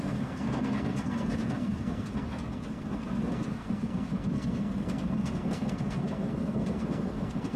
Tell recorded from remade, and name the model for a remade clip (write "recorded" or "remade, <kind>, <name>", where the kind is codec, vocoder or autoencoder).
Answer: remade, codec, SNAC